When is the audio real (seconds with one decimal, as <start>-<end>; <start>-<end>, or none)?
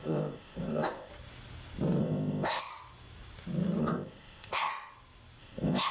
1.1-2.0; 2.7-3.8; 4.7-5.4